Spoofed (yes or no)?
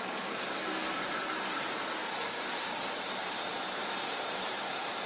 yes